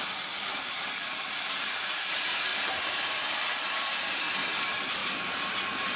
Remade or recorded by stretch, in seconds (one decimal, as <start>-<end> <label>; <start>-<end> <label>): 0.0-6.0 remade

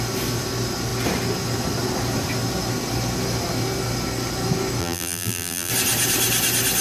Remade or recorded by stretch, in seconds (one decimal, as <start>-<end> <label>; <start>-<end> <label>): 0.0-4.8 recorded; 4.8-5.7 remade; 5.7-6.8 recorded

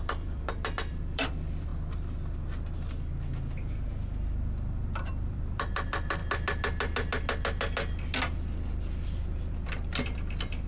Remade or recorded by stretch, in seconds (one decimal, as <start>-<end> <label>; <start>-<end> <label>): 0.0-1.7 remade; 1.7-5.1 recorded; 5.1-6.2 remade; 6.2-9.2 recorded; 9.2-10.7 remade

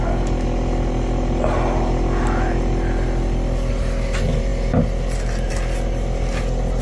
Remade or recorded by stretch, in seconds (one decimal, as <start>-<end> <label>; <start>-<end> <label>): 0.0-6.8 recorded

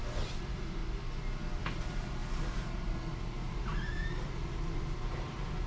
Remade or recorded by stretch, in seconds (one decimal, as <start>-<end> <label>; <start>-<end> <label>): 0.0-0.8 remade; 0.8-1.6 recorded; 1.6-2.2 remade; 2.2-5.7 recorded

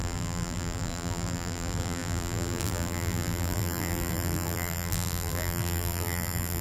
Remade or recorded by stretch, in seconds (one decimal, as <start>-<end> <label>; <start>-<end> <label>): 0.0-6.6 remade

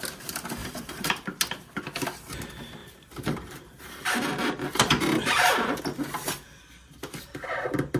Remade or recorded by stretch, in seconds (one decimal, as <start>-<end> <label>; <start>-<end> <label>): 0.0-0.6 recorded; 0.6-1.4 remade; 1.4-2.8 recorded; 2.8-5.8 remade; 5.8-8.0 recorded

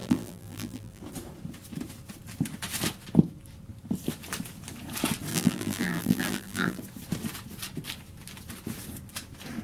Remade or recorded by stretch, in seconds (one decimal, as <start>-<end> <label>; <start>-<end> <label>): 0.0-1.0 remade; 1.0-5.3 recorded; 5.3-6.8 remade; 6.8-9.6 recorded